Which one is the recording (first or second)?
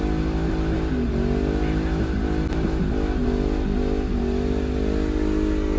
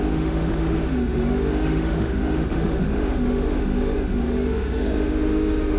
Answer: first